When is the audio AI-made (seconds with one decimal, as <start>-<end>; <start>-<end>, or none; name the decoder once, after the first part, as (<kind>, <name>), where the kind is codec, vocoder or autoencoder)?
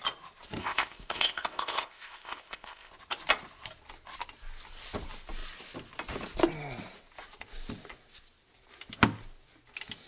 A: 0.6-2.9 (codec, ZipCodec)